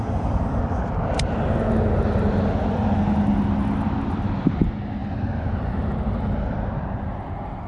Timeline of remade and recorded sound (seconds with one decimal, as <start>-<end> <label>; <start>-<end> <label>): 0.0-7.7 recorded